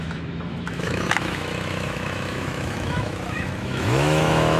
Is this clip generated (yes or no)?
yes